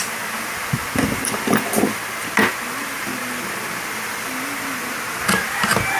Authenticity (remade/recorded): recorded